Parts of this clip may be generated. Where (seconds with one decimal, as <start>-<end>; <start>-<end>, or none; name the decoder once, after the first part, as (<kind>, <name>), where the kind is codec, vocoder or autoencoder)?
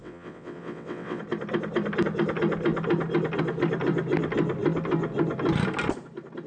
0.0-1.2 (vocoder, WaveNeXt)